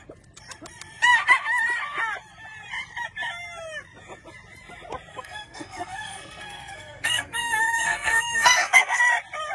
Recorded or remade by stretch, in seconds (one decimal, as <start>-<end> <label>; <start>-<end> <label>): 0.0-5.1 recorded; 5.1-9.0 remade; 9.0-9.5 recorded